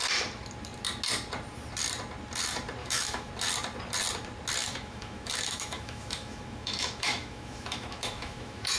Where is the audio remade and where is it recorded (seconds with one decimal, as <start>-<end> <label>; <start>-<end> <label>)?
0.0-2.8 recorded; 2.8-3.3 remade; 3.3-4.6 recorded; 4.6-8.8 remade